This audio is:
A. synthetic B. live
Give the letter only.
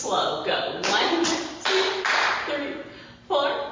B